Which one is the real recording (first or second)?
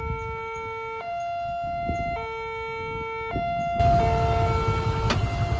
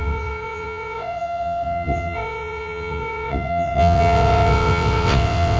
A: first